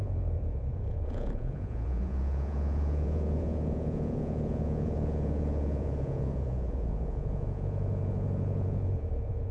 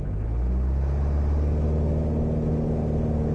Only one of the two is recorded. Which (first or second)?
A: second